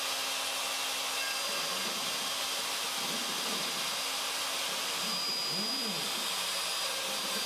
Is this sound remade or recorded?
recorded